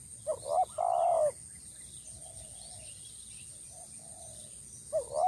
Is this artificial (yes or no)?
no